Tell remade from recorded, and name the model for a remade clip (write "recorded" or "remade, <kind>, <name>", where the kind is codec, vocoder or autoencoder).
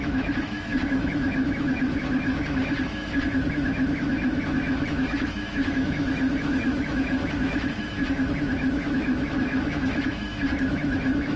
remade, autoencoder, DAC-VAE